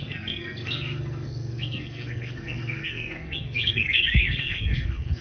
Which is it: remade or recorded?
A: remade